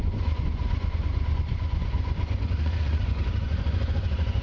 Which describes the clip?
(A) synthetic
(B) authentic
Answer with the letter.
A